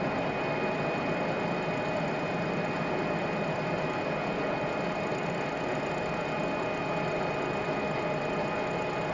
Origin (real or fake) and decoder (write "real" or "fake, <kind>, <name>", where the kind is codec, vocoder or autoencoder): real